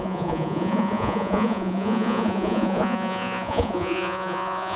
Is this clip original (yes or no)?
no